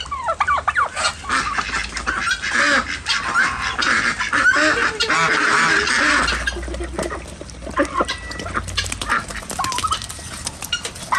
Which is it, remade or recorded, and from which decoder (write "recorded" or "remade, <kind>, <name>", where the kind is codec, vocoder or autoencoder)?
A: recorded